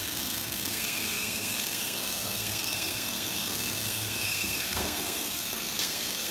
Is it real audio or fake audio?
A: fake